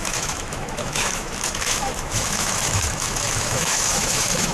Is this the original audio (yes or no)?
no